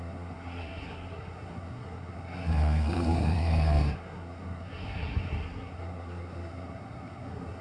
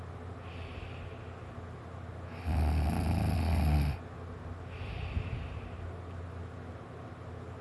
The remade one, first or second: first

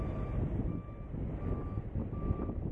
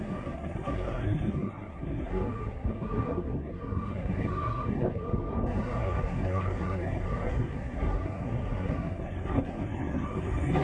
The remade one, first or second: second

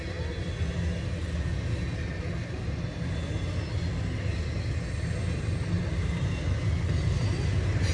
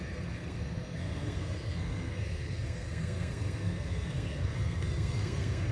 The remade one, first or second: second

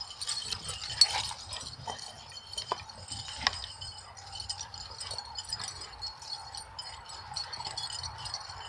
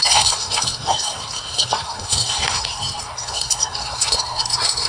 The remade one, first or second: second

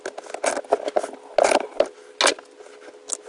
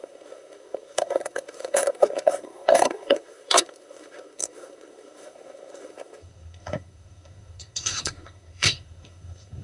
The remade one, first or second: second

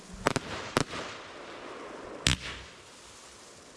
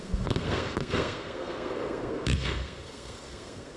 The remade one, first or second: second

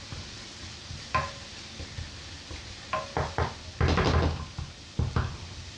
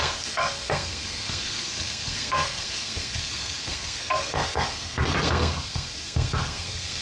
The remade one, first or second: second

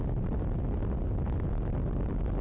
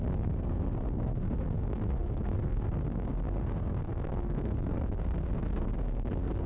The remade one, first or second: second